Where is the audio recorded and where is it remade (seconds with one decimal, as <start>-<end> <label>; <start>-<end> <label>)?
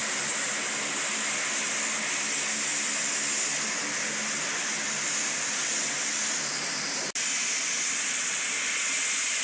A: 0.0-9.4 recorded